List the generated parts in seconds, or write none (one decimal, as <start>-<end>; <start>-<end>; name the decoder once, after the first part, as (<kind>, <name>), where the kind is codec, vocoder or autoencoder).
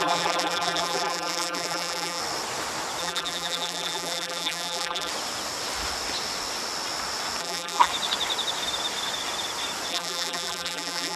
0.0-2.2 (vocoder, BigVGAN v2); 3.0-5.1; 7.4-7.9; 9.9-11.2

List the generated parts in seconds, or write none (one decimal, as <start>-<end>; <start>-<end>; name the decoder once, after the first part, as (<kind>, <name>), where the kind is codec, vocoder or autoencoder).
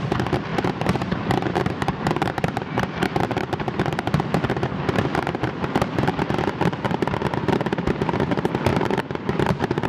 0.5-4.2 (vocoder, BigVGAN v2); 8.7-9.9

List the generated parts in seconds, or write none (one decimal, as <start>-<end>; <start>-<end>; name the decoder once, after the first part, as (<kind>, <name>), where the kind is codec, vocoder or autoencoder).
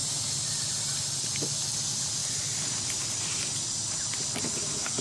0.0-0.7 (vocoder, BigVGAN v2); 2.2-4.2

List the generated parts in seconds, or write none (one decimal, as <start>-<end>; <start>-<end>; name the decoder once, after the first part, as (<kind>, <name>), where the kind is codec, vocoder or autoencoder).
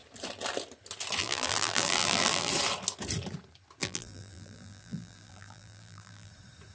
1.2-2.5 (vocoder, BigVGAN v2); 3.8-6.3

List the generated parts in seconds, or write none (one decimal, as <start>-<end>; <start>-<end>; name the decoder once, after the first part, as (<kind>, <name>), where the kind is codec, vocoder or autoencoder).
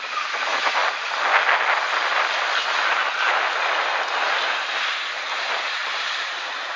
5.8-6.8 (vocoder, BigVGAN v2)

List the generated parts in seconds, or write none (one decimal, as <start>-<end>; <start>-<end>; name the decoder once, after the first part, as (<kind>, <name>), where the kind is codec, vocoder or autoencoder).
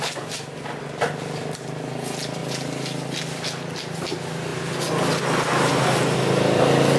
none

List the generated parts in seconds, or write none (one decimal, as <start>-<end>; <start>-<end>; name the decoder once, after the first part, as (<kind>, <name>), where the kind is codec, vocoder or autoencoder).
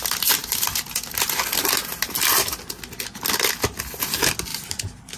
4.5-5.2 (vocoder, BigVGAN v2)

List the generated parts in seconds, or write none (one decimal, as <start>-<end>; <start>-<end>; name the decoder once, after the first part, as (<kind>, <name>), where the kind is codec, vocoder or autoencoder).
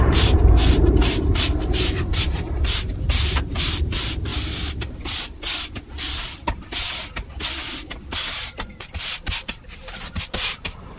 0.0-4.3 (vocoder, BigVGAN v2); 8.2-11.0